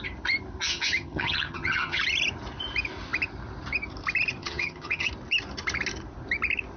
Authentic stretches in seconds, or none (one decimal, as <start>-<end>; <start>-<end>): 0.0-0.7; 2.0-4.4; 5.1-6.8